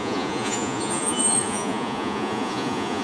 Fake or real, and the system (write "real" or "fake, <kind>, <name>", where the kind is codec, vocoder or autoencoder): fake, vocoder, Vocos